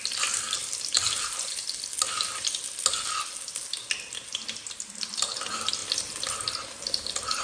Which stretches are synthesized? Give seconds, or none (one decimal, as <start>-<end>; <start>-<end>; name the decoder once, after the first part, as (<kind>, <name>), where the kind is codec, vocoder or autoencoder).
none